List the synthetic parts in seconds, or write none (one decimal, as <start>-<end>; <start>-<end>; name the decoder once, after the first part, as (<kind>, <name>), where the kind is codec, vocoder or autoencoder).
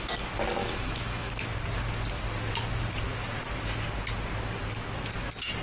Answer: 0.6-1.3 (autoencoder, DAC-VAE)